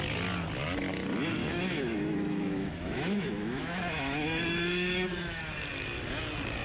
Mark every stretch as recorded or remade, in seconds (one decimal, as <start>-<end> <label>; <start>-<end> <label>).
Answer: 0.0-1.4 recorded; 1.4-5.4 remade; 5.4-6.6 recorded